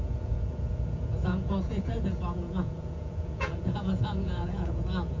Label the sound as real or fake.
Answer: fake